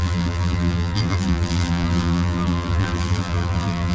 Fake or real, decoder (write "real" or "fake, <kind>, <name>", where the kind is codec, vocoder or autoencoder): fake, vocoder, BigVGAN v2